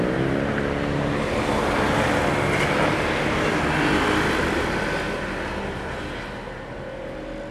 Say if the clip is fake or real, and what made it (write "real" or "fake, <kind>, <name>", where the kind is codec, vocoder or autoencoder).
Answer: real